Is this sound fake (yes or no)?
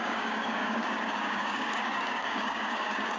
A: yes